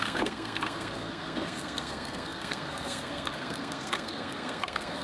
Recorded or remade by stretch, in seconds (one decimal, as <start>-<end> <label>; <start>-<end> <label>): 0.0-5.0 remade